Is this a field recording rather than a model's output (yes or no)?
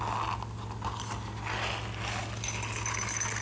yes